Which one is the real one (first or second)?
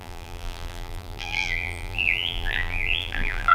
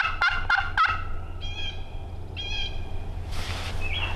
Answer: second